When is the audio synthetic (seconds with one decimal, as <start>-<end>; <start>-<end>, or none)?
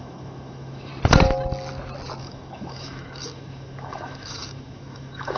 0.0-0.9; 2.2-5.4